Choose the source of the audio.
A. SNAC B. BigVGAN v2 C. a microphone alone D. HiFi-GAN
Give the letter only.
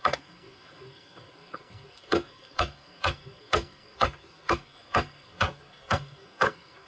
A